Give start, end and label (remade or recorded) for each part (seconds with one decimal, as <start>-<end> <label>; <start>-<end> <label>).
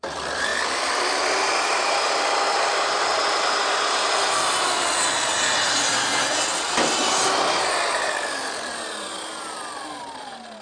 0.0-3.7 remade; 3.7-8.4 recorded; 8.4-10.6 remade